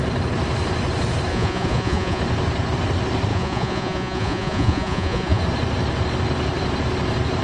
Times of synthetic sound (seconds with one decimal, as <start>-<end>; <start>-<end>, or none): 1.3-2.2; 3.3-5.4